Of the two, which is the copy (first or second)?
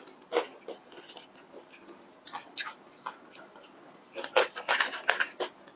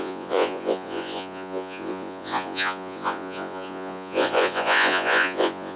second